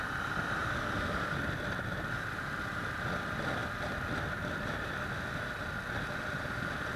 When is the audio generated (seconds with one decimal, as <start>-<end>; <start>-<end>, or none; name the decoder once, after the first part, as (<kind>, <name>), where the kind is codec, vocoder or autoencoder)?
0.6-2.6 (vocoder, BigVGAN v2)